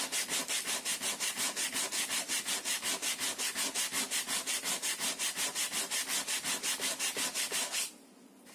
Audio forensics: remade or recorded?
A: recorded